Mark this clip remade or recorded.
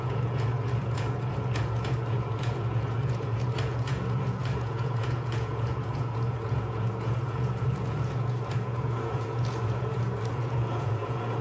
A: remade